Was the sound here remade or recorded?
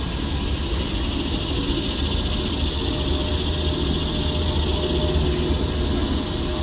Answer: recorded